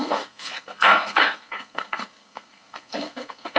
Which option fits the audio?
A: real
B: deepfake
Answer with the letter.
B